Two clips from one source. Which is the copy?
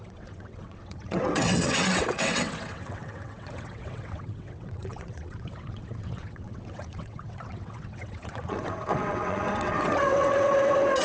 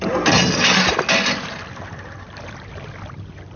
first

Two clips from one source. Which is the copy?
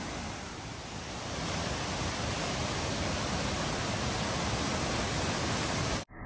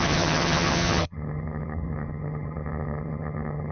second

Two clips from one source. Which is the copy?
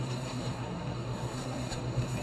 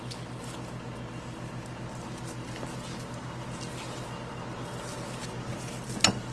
first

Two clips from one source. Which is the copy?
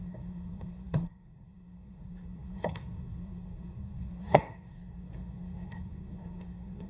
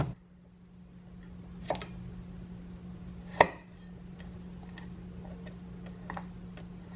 first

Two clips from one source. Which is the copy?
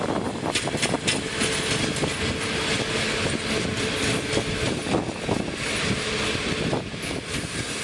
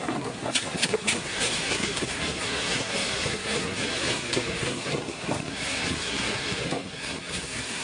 second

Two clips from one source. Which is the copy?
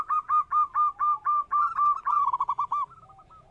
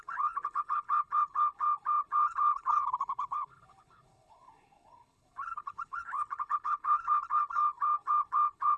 second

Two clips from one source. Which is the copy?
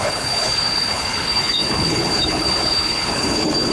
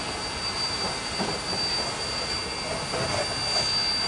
first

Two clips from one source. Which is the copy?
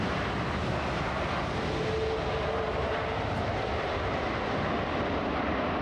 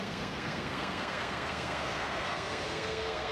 second